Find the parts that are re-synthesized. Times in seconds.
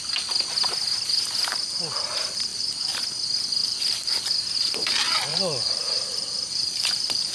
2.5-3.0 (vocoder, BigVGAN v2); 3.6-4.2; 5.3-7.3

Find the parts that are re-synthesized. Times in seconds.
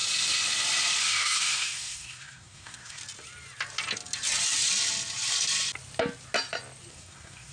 1.0-3.0 (codec, SNAC); 6.9-7.5